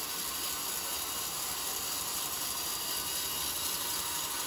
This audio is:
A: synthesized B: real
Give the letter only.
B